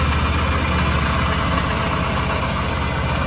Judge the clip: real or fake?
real